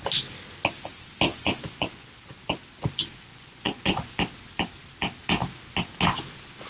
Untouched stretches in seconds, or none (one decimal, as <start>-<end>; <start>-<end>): 0.0-1.3; 2.5-3.3; 4.1-6.7